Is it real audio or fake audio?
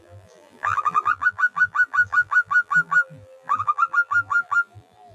fake